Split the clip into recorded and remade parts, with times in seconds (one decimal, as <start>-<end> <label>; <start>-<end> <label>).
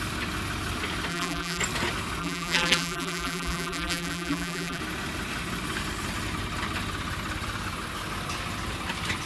0.0-1.1 recorded; 1.1-1.6 remade; 1.6-2.2 recorded; 2.2-4.8 remade; 4.8-9.3 recorded